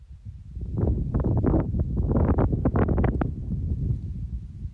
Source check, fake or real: real